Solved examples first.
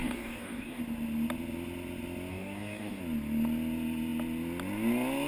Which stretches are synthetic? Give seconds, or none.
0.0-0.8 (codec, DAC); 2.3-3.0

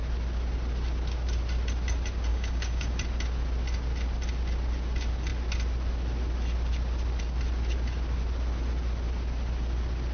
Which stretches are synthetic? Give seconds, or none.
2.3-2.9 (codec, DAC)

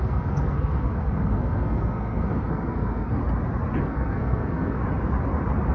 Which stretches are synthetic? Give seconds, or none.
0.0-3.2 (codec, SNAC); 3.8-4.8

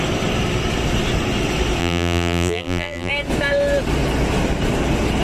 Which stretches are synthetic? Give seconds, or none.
1.8-3.1 (vocoder, BigVGAN v2)

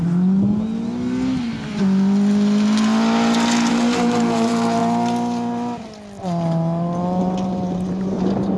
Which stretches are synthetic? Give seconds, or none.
3.7-4.8 (vocoder, BigVGAN v2); 7.2-8.6

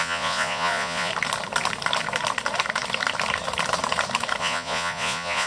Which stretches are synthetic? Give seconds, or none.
0.0-1.1 (vocoder, Vocos); 4.4-5.5